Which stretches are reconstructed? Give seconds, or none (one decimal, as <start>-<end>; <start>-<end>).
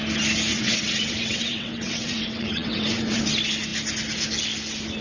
0.5-3.2